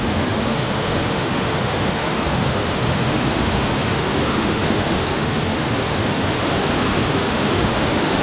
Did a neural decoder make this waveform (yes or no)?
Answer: yes